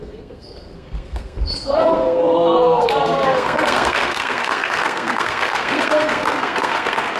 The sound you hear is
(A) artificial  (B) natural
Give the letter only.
A